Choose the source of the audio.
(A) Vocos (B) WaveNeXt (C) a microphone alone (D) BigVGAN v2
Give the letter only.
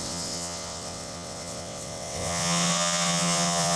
B